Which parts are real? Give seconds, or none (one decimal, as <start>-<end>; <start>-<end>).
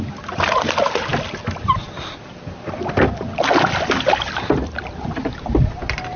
0.0-6.2